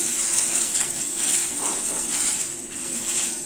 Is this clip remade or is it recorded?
remade